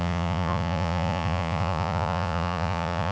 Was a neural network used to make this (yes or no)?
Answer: yes